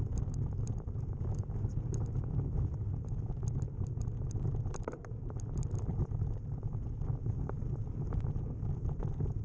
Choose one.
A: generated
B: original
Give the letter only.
B